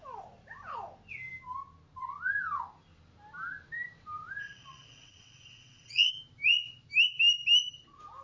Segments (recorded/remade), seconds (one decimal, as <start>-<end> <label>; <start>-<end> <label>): 0.0-4.4 recorded; 4.4-6.1 remade; 6.1-8.2 recorded